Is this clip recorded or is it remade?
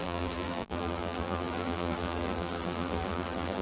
remade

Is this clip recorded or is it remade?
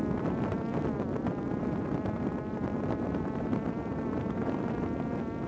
remade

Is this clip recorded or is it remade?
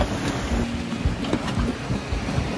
recorded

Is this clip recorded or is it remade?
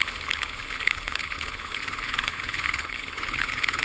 remade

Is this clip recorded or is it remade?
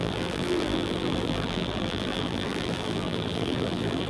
remade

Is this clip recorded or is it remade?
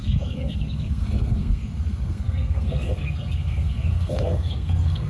remade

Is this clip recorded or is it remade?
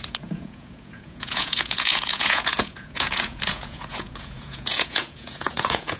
remade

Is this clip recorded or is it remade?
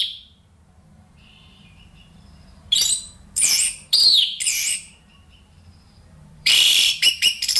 remade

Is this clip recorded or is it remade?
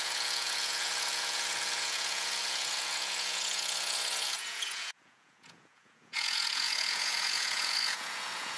remade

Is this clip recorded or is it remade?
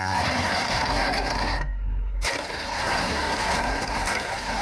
remade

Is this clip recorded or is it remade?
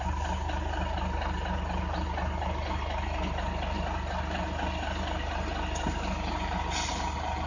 recorded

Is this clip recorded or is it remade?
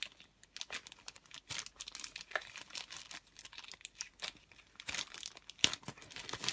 recorded